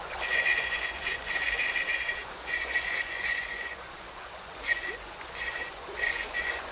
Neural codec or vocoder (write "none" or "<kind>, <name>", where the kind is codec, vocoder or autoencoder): vocoder, Vocos